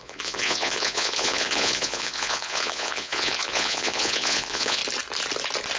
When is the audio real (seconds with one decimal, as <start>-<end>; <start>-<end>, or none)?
4.8-5.8